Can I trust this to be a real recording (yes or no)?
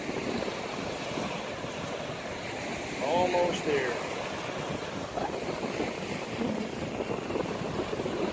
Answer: yes